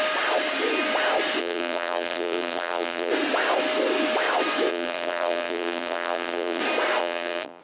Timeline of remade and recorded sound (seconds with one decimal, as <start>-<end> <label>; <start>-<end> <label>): 0.0-1.4 recorded; 1.4-3.1 remade; 3.1-4.7 recorded; 4.7-6.6 remade; 6.6-7.0 recorded; 7.0-7.6 remade